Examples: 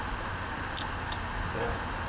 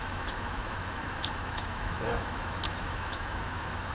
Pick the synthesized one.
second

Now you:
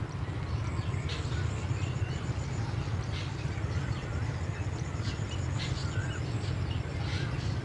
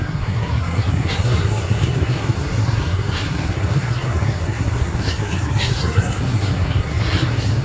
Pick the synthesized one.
second